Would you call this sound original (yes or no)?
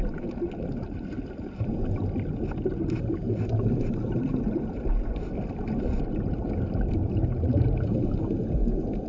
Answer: yes